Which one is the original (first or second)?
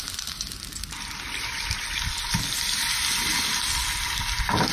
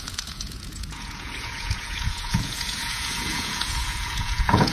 first